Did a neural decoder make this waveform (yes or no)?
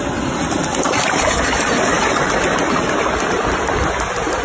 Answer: no